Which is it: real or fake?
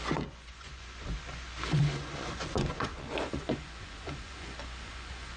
fake